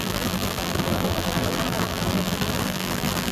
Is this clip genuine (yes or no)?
no